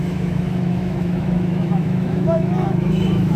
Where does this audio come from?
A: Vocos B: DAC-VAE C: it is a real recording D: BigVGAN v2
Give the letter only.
B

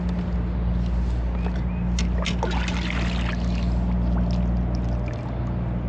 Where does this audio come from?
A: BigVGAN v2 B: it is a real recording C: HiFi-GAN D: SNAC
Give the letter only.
B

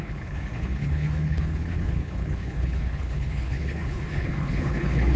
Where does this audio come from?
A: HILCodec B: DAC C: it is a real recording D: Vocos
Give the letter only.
A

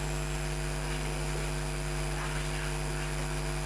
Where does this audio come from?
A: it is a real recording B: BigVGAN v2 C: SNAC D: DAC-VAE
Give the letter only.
A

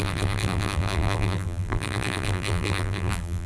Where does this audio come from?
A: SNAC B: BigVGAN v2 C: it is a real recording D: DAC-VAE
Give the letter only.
B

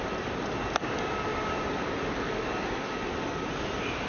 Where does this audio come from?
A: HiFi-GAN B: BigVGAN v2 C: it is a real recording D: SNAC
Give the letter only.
C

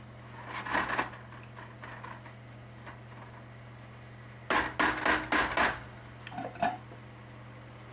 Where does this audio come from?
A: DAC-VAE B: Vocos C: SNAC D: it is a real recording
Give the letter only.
D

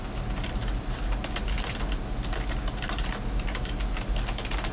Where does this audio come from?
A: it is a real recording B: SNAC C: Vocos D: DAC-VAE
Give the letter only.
A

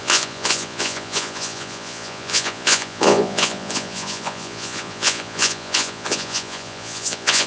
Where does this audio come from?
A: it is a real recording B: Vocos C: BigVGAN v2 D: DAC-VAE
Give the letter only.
B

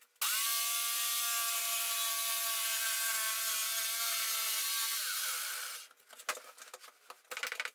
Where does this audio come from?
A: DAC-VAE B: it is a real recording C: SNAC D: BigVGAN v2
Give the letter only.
B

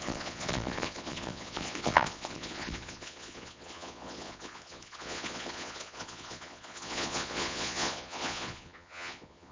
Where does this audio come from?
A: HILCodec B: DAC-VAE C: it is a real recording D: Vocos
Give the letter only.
D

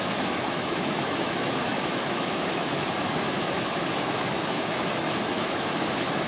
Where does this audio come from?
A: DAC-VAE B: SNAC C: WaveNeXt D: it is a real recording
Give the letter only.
A